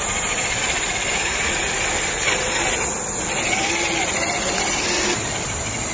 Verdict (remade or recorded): recorded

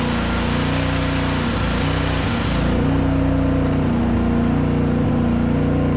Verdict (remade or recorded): recorded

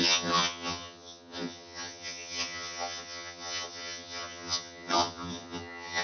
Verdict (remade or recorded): remade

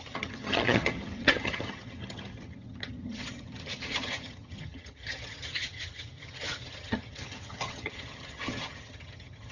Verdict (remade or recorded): remade